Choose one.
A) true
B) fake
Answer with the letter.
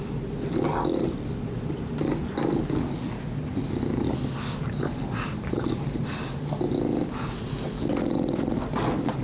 A